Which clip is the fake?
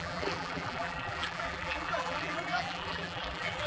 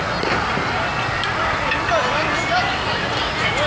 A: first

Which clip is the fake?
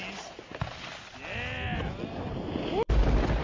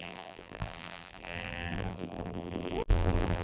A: second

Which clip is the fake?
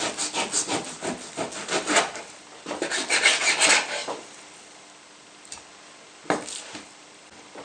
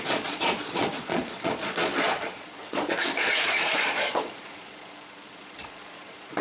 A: second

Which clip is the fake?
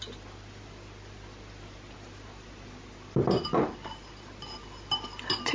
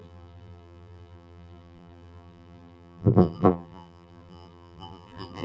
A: second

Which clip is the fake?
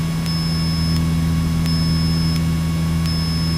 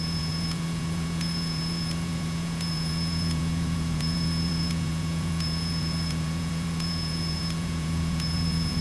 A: second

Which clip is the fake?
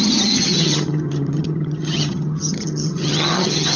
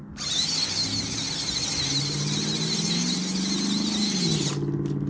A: first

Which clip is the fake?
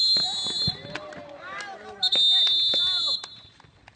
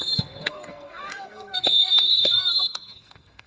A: second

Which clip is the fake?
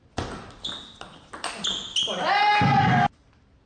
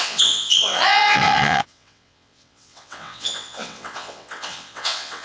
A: second